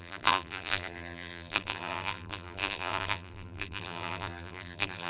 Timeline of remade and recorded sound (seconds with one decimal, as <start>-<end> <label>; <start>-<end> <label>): 0.0-5.1 remade